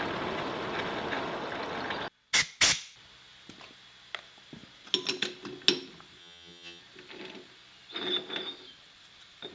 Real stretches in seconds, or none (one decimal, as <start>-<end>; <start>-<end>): 0.0-6.2; 6.8-9.5